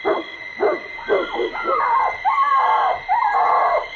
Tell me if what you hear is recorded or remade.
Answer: recorded